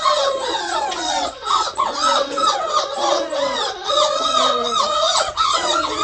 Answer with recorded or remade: remade